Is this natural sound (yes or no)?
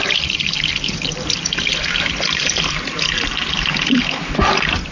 yes